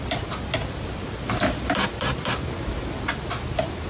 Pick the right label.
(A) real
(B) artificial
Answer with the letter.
A